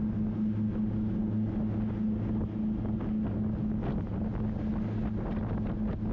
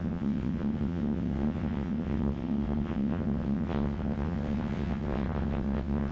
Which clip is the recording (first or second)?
first